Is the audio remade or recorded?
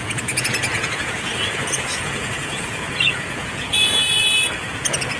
remade